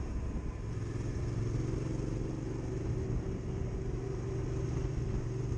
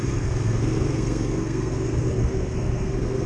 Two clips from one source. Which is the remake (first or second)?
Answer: second